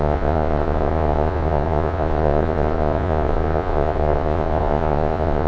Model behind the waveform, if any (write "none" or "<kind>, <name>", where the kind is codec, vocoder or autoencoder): vocoder, Vocos